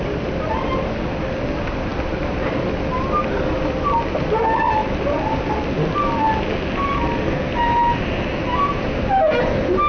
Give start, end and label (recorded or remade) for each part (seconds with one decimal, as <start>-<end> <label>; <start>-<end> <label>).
0.0-9.9 recorded